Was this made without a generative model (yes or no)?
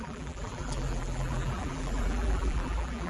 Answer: no